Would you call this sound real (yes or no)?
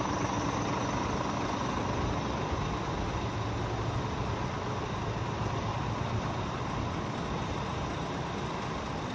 yes